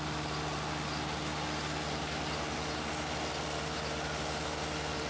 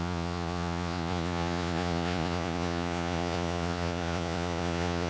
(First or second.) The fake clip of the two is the second